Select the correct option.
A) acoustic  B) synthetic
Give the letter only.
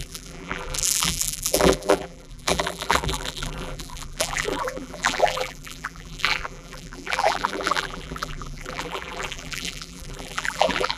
B